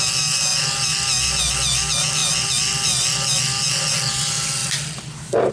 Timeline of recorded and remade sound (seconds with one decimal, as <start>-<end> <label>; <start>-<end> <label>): 0.0-5.5 recorded